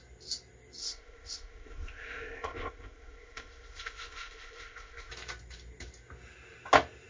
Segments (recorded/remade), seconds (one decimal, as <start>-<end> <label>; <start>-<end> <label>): 0.0-0.8 recorded; 0.8-5.1 remade; 5.1-7.1 recorded